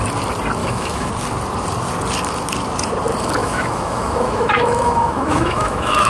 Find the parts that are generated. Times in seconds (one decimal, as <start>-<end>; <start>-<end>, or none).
0.6-1.1; 3.4-6.1